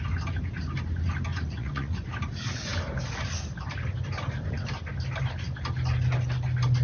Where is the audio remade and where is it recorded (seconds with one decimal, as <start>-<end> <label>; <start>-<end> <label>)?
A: 0.0-1.3 recorded; 1.3-2.1 remade; 2.1-6.8 recorded